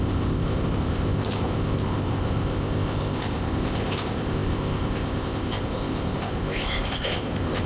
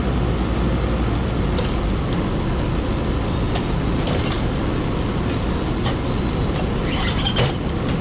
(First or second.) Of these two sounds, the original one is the second